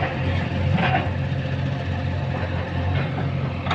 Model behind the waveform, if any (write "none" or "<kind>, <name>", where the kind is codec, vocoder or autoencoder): none